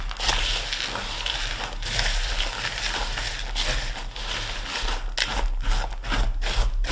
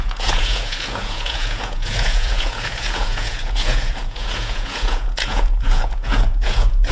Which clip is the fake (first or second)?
second